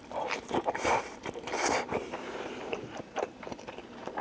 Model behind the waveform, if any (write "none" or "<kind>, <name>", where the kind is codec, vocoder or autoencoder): vocoder, BigVGAN v2